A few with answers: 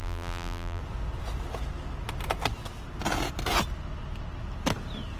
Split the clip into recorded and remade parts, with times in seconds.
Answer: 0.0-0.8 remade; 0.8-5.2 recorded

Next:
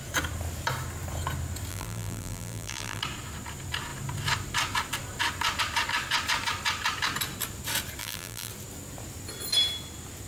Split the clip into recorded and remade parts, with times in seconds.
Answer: 0.0-1.7 recorded; 1.7-3.0 remade; 3.0-8.0 recorded; 8.0-8.5 remade; 8.5-10.3 recorded

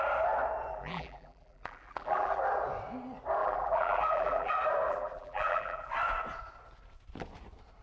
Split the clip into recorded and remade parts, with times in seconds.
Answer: 0.0-0.7 recorded; 0.7-2.4 remade; 2.4-3.4 recorded; 3.4-4.5 remade; 4.5-4.9 recorded; 4.9-5.9 remade; 5.9-7.8 recorded

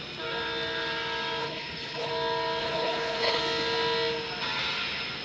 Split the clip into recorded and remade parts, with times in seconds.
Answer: 0.0-1.4 recorded; 1.4-2.1 remade; 2.1-2.6 recorded; 2.6-3.4 remade; 3.4-5.2 recorded

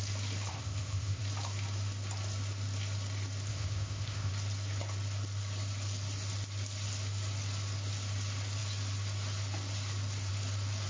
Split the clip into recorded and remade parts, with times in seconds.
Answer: 0.0-0.5 recorded; 0.5-1.2 remade; 1.2-3.5 recorded; 3.5-4.3 remade; 4.3-10.9 recorded